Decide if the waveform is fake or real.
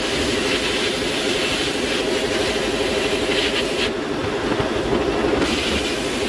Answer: real